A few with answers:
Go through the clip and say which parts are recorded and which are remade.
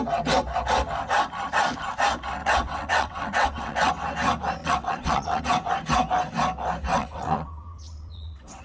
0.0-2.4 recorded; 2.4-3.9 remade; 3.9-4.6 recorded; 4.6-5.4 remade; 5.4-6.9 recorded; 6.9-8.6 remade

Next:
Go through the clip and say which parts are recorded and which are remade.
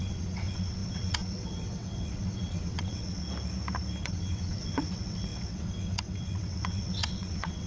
0.0-3.2 remade; 3.2-4.0 recorded; 4.0-7.7 remade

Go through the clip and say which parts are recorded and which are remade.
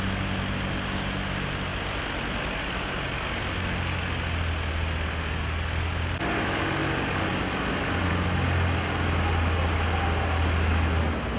0.0-11.4 recorded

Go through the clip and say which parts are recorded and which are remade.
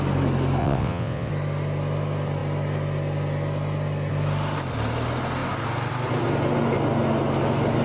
0.0-0.6 recorded; 0.6-1.3 remade; 1.3-7.8 recorded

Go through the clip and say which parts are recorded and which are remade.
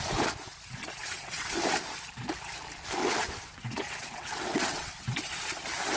0.0-1.0 recorded; 1.0-1.5 remade; 1.5-3.0 recorded; 3.0-4.9 remade; 4.9-6.0 recorded